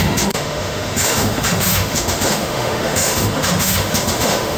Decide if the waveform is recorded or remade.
remade